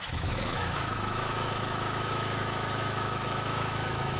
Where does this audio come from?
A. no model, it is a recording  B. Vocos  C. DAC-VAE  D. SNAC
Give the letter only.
C